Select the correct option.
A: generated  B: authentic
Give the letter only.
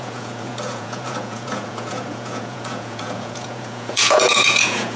A